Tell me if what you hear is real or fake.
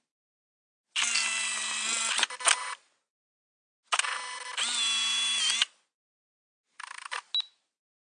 real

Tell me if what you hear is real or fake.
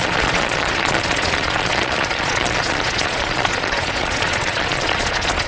fake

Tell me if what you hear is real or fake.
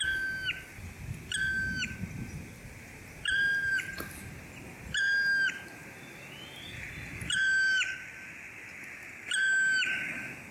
real